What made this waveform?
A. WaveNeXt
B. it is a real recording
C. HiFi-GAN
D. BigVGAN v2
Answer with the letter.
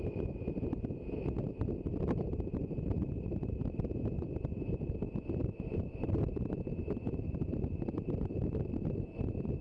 D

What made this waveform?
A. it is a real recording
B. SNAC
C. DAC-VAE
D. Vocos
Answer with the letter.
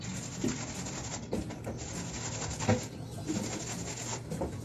A